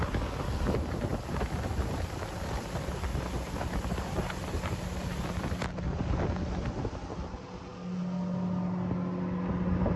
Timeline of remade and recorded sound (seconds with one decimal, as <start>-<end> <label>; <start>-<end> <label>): 0.0-10.0 recorded